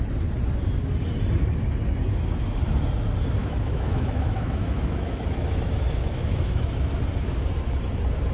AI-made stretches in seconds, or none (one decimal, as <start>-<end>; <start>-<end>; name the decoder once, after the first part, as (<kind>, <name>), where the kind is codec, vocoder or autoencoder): 3.4-6.9 (autoencoder, DAC-VAE)